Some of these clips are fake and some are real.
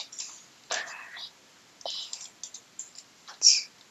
real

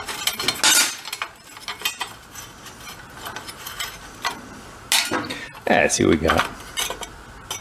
real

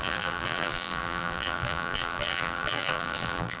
fake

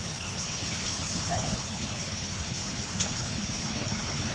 fake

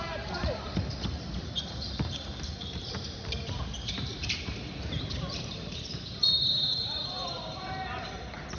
fake